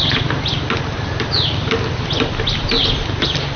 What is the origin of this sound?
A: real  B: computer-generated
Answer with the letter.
A